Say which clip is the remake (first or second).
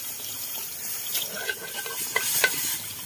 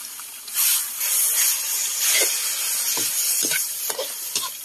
first